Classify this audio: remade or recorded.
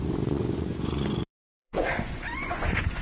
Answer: remade